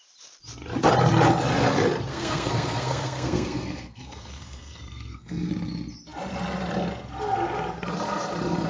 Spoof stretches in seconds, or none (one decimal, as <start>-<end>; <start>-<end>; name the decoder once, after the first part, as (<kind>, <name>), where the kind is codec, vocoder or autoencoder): 2.1-5.5 (codec, SNAC)